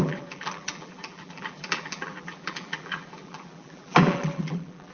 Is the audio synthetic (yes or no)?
yes